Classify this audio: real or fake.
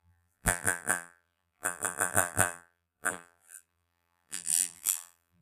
fake